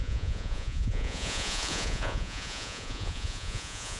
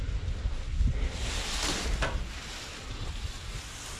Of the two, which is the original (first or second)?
second